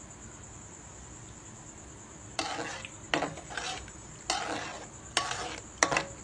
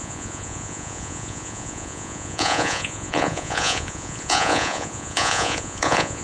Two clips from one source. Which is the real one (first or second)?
first